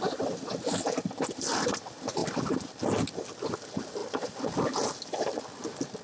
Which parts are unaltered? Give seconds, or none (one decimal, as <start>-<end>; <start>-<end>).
0.0-6.0

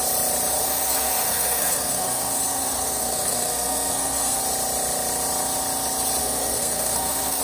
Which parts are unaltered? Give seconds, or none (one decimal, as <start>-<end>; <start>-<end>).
0.0-0.6; 4.4-6.2

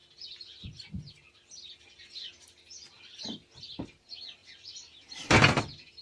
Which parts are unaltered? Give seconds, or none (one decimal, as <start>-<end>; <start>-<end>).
0.0-6.0

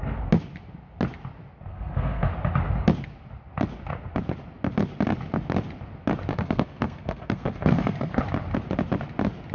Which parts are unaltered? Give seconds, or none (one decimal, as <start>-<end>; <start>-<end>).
0.0-1.7; 2.3-6.3; 8.2-9.5